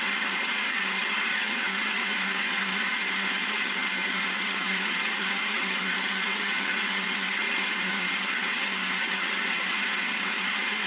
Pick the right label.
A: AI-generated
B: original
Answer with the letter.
A